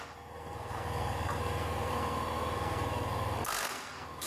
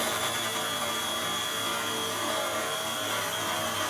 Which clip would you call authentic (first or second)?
second